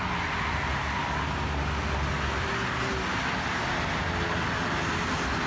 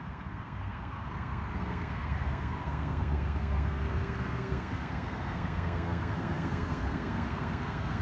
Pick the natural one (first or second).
first